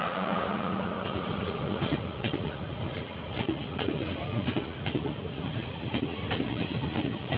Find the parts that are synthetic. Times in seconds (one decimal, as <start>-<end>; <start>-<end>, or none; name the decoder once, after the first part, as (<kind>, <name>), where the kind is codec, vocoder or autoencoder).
0.0-7.4 (vocoder, Vocos)